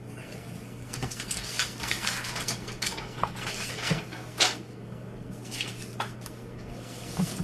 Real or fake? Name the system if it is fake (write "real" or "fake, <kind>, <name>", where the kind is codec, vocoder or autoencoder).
fake, codec, SNAC